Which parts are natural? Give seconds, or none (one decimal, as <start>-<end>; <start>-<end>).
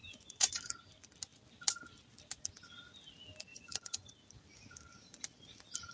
0.6-3.5; 4.1-5.9